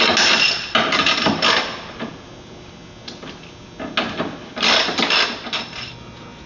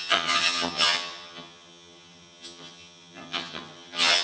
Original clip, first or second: first